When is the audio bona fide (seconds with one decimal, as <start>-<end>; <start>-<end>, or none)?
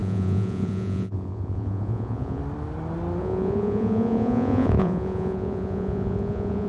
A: 2.4-3.2